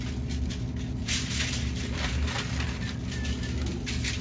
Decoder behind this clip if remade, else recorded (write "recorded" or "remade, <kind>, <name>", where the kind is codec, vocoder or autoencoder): recorded